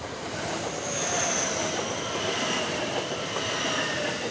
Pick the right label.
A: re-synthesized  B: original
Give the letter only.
A